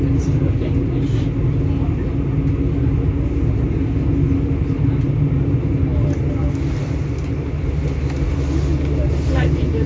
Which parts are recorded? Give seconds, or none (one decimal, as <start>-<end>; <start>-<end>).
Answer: 0.0-9.9